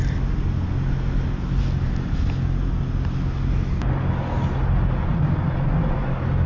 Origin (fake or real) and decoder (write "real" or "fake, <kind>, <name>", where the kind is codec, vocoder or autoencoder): real